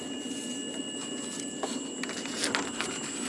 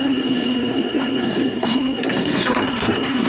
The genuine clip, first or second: first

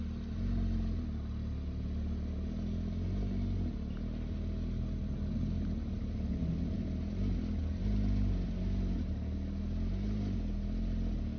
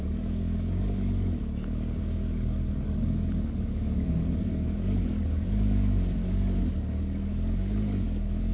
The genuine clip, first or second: first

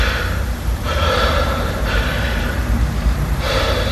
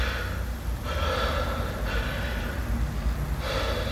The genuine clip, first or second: second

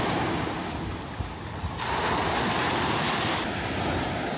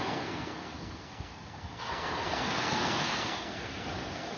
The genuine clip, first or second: first